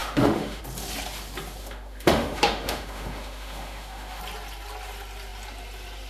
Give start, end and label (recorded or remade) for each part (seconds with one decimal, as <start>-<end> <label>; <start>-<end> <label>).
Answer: 0.0-0.6 remade; 0.6-1.6 recorded; 1.6-4.2 remade; 4.2-6.1 recorded